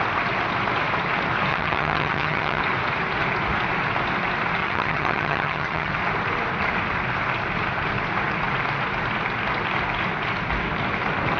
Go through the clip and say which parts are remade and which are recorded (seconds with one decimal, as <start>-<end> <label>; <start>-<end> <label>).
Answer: 0.0-1.5 recorded; 1.5-2.6 remade; 2.6-4.6 recorded; 4.6-5.9 remade; 5.9-11.4 recorded